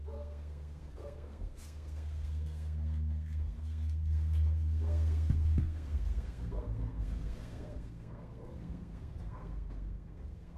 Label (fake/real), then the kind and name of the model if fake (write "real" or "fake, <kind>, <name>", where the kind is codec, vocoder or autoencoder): fake, codec, SNAC